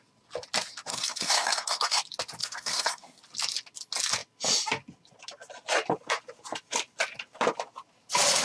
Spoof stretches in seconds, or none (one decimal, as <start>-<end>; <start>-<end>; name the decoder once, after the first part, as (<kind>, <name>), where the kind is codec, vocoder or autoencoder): 0.9-2.0 (codec, SNAC); 2.4-3.2